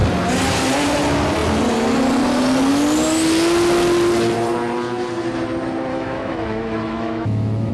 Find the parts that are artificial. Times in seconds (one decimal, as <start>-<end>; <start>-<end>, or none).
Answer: 5.9-7.7